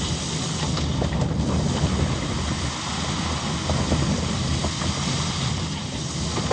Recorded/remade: recorded